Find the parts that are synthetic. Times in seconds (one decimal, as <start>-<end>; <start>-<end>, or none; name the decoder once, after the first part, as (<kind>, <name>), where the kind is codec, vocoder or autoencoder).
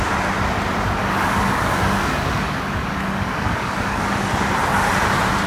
1.0-4.3 (codec, DAC)